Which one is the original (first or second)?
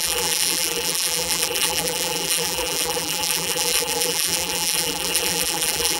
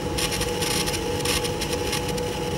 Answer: second